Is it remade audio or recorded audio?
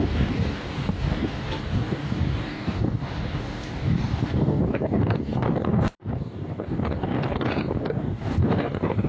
remade